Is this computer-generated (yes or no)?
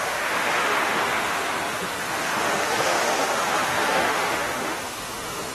yes